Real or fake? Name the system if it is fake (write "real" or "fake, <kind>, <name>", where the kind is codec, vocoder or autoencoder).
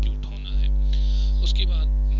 real